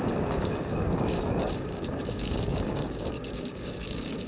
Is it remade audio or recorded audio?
remade